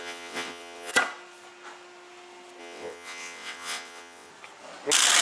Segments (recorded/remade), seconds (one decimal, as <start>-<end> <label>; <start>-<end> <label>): 0.0-0.9 remade; 0.9-2.6 recorded; 2.6-4.3 remade; 4.3-5.2 recorded